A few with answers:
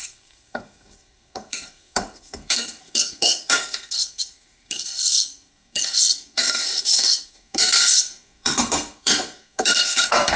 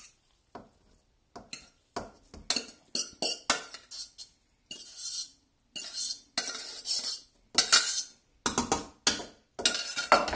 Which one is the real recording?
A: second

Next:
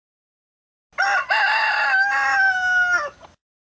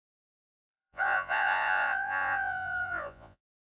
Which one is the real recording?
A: first